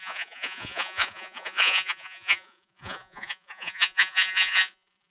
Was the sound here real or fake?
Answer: fake